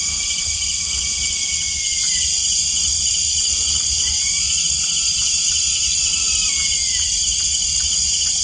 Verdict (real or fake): fake